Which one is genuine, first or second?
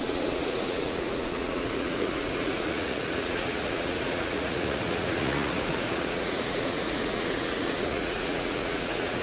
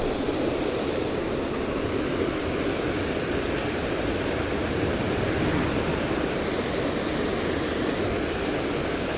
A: second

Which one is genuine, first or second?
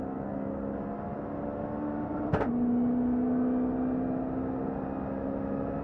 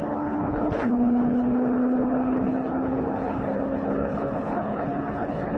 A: first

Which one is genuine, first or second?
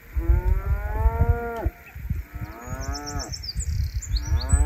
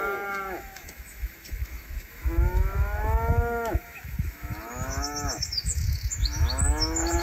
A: first